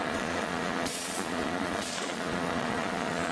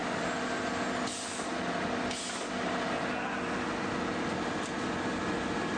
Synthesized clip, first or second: first